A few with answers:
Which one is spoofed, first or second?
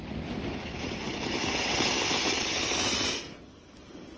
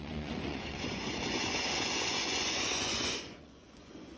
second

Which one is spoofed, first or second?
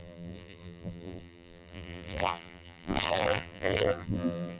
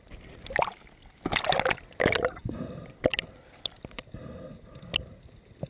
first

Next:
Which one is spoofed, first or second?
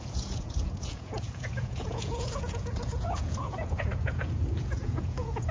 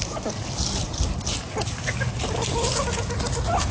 first